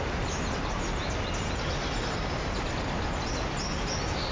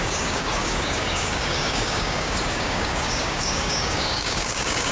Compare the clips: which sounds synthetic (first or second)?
second